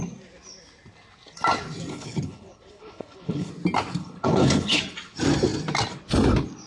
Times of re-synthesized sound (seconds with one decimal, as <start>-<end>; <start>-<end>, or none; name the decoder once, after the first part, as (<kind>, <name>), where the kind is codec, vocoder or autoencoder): 1.9-3.5 (codec, HILCodec); 4.0-4.8